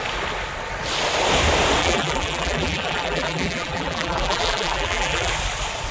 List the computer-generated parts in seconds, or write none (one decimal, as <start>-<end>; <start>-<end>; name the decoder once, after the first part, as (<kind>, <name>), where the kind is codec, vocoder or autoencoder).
1.8-5.3 (vocoder, BigVGAN v2)